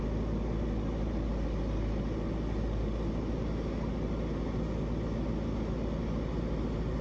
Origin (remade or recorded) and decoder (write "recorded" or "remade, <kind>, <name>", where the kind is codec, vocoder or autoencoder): recorded